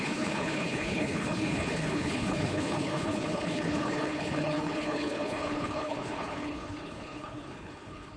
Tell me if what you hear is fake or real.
fake